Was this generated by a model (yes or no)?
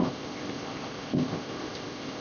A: yes